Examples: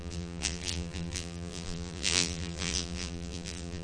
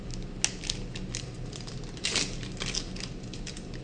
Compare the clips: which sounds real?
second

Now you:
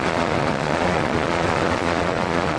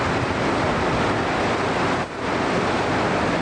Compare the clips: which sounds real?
second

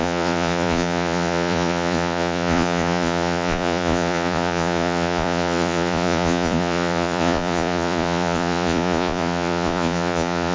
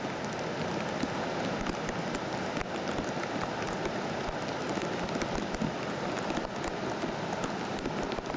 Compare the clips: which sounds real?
second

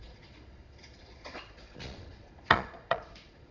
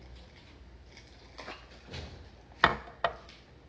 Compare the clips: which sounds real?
second